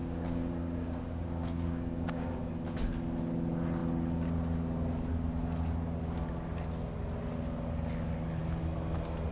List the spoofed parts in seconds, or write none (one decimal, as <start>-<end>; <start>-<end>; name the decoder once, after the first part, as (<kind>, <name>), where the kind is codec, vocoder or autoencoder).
0.0-2.5 (codec, DAC)